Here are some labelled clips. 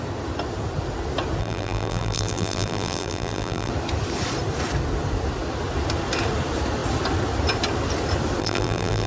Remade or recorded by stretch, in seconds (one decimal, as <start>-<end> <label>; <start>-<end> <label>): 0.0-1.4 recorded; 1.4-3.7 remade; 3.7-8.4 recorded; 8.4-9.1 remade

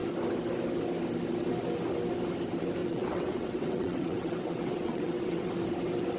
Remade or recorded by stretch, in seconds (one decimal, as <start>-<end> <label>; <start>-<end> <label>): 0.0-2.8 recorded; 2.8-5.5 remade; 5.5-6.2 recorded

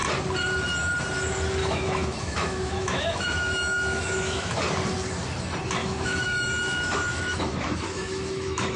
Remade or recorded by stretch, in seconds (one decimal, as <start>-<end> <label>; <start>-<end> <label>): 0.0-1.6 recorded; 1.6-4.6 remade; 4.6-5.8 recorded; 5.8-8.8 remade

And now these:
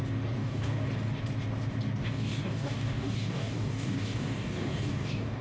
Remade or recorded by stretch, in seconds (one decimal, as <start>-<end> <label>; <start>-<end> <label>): 0.0-0.4 recorded; 0.4-0.9 remade; 0.9-2.0 recorded; 2.0-5.4 remade

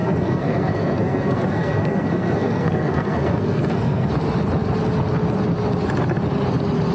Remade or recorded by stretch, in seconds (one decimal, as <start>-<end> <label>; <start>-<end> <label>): 0.0-4.1 remade; 4.1-6.9 recorded

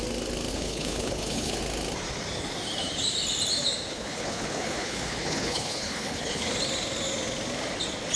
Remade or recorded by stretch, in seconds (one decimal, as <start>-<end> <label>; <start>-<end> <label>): 0.0-0.5 recorded; 0.5-1.6 remade; 1.6-3.9 recorded; 3.9-6.5 remade; 6.5-8.2 recorded

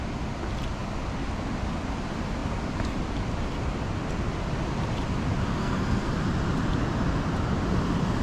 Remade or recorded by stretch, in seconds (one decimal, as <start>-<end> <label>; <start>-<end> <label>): 0.0-5.6 recorded; 5.6-6.1 remade; 6.1-8.2 recorded

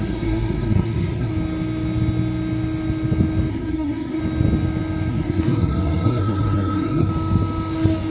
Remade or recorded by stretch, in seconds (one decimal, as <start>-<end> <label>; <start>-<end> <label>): 0.0-1.3 remade; 1.3-3.5 recorded; 3.5-4.2 remade; 4.2-5.1 recorded; 5.1-7.1 remade; 7.1-8.1 recorded